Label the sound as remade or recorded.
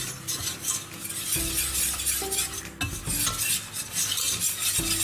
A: recorded